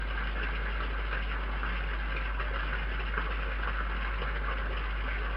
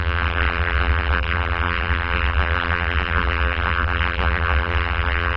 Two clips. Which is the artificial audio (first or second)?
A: second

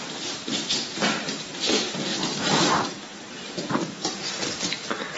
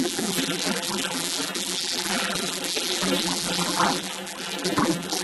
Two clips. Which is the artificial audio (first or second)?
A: second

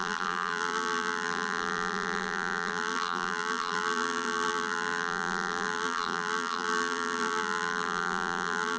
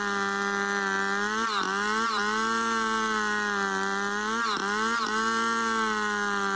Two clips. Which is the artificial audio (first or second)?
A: first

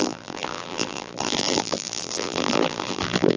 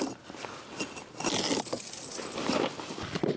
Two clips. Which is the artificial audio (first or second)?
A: first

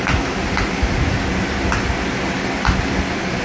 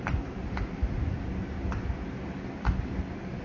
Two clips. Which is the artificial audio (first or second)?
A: second